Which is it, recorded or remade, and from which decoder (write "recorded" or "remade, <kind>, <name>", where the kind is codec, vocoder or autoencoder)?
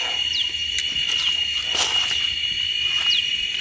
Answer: recorded